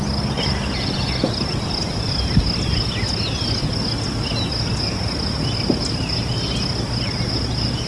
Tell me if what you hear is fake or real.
real